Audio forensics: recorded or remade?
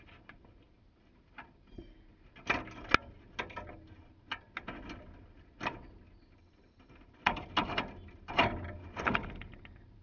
recorded